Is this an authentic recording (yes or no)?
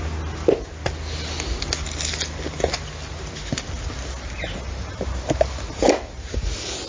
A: yes